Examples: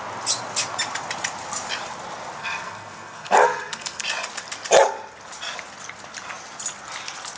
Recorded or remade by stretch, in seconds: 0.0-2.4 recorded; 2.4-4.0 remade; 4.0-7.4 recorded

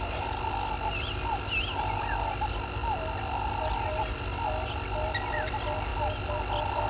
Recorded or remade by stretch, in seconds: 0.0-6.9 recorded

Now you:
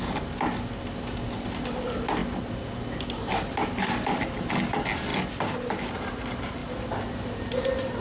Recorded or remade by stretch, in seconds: 0.0-8.0 recorded

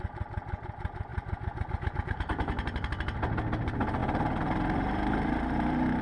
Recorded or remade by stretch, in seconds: 0.0-1.1 recorded; 1.1-2.2 remade; 2.2-4.0 recorded; 4.0-6.0 remade

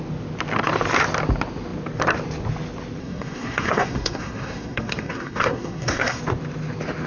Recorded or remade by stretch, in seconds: 0.0-3.0 recorded; 3.0-6.2 remade; 6.2-7.1 recorded

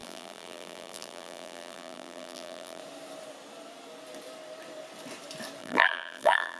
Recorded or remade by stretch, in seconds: 0.0-2.8 remade; 2.8-5.6 recorded; 5.6-6.6 remade

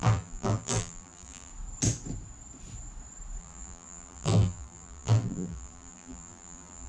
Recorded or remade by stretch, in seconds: 0.0-1.5 remade; 1.5-3.4 recorded; 3.4-6.9 remade

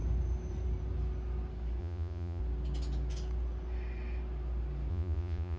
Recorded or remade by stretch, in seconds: 0.0-1.8 recorded; 1.8-2.4 remade; 2.4-4.9 recorded; 4.9-5.6 remade